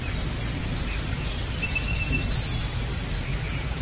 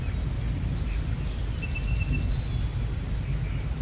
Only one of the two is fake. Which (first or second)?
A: first